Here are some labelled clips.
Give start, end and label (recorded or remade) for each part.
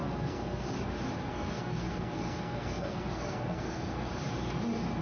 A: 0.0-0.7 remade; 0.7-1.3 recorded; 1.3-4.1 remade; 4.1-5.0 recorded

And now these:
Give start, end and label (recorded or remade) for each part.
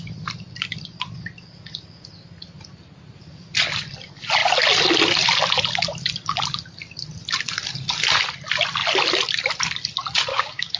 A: 0.0-10.3 recorded; 10.3-10.8 remade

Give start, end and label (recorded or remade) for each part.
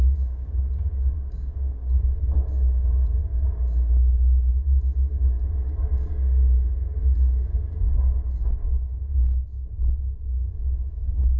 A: 0.0-3.3 remade; 3.3-4.5 recorded; 4.5-11.4 remade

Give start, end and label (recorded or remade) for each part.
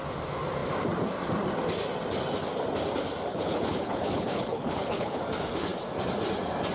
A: 0.0-3.3 recorded; 3.3-5.2 remade; 5.2-6.7 recorded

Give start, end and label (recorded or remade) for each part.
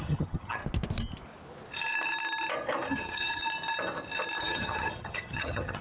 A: 0.0-0.6 remade; 0.6-2.9 recorded; 2.9-3.4 remade; 3.4-4.4 recorded; 4.4-5.8 remade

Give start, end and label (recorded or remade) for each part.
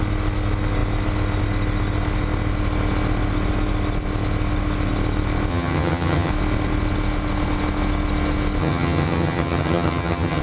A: 0.0-5.5 recorded; 5.5-6.3 remade; 6.3-8.6 recorded; 8.6-10.4 remade